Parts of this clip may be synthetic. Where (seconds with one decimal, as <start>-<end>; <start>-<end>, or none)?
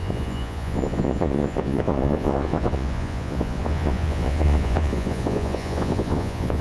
0.0-6.6